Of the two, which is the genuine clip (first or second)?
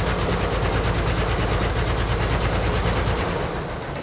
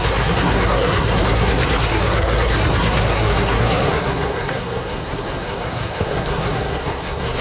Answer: first